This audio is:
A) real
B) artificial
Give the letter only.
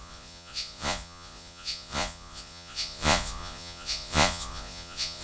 B